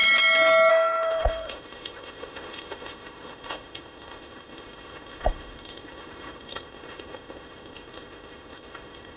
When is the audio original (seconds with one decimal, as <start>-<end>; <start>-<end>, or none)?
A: 0.0-0.7